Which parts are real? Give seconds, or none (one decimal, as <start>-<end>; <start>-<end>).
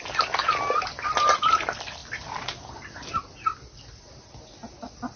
0.0-5.2